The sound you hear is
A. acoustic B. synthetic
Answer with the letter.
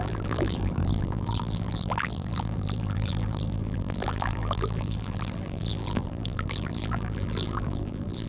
B